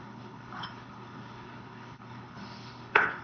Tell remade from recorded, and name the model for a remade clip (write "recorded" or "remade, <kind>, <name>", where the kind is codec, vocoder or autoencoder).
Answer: remade, codec, HILCodec